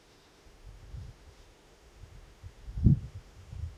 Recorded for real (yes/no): no